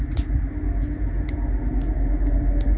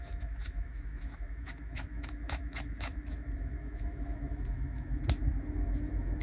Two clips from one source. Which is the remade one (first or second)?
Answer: second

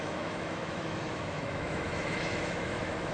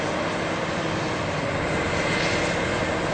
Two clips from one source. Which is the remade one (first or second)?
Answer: first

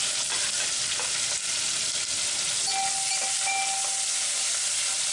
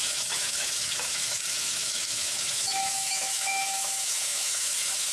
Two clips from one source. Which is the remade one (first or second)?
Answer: second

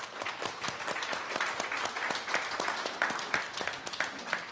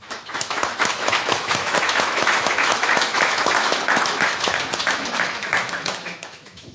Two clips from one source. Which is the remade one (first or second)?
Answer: second